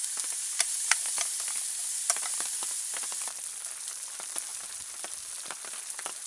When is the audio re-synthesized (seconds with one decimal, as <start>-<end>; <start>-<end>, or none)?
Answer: 0.0-1.4